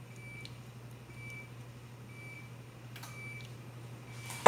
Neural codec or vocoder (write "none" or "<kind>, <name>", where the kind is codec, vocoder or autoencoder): none